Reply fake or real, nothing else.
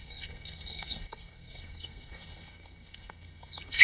fake